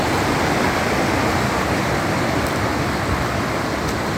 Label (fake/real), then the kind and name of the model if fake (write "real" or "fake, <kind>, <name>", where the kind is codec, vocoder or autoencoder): real